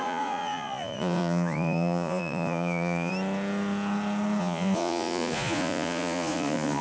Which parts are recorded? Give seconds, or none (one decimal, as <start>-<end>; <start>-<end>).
3.1-4.4